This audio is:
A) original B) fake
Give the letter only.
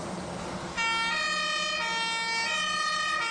A